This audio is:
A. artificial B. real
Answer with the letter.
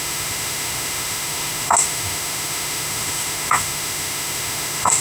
A